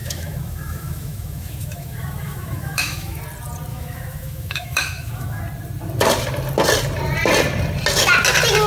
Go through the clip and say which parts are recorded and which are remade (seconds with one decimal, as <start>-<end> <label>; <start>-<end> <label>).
0.0-3.2 remade; 3.2-3.7 recorded; 3.7-5.4 remade; 5.4-8.7 recorded